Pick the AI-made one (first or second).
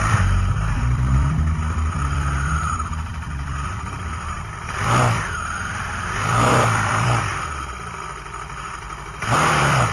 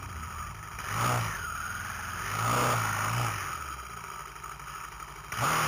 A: first